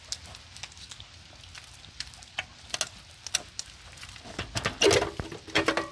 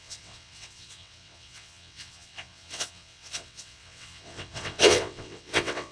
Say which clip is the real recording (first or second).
first